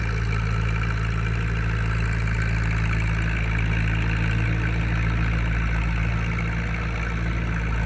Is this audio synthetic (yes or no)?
no